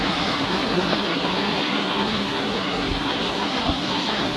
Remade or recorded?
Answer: remade